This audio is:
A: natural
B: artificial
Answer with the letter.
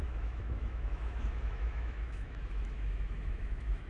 B